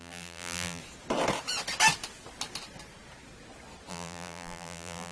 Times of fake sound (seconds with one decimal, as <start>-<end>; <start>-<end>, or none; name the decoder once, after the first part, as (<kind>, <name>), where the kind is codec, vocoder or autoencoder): 0.0-0.8 (vocoder, BigVGAN v2); 3.9-5.1